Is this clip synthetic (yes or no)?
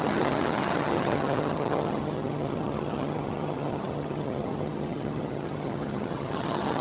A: yes